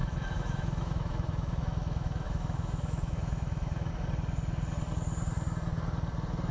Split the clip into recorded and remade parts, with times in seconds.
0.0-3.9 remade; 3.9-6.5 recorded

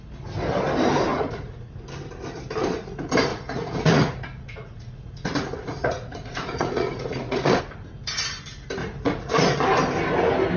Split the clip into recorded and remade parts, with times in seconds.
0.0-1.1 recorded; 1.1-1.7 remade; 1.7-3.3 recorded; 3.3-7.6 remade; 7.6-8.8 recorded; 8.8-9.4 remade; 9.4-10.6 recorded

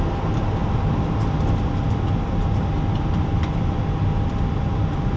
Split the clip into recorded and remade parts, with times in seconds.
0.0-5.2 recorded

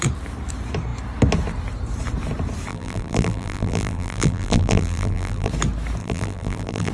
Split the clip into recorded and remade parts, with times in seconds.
0.0-2.7 recorded; 2.7-5.5 remade; 5.5-6.0 recorded; 6.0-6.9 remade

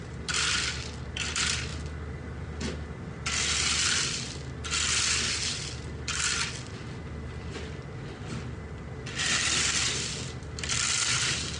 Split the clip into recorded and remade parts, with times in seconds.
0.0-11.6 recorded